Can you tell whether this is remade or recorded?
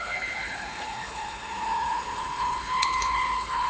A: remade